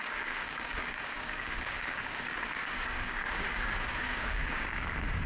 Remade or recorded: remade